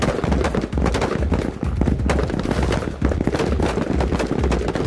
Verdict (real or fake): real